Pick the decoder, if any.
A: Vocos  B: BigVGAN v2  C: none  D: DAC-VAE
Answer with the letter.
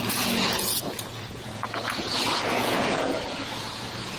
A